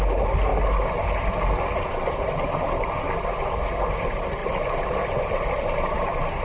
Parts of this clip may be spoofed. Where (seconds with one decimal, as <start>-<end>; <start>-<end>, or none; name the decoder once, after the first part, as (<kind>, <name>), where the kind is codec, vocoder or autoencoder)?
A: none